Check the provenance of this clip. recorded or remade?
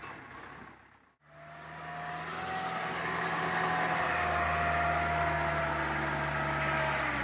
recorded